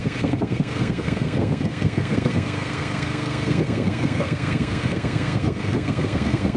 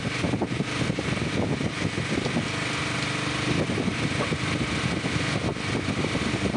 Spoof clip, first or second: first